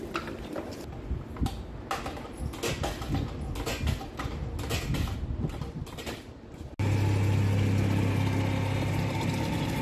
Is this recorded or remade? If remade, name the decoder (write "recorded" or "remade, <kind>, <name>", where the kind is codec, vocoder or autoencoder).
recorded